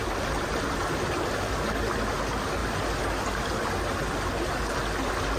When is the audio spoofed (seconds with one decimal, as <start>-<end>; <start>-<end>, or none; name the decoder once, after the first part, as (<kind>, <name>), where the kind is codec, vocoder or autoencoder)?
none